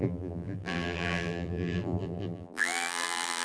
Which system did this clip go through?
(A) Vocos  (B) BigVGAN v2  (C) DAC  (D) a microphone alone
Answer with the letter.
B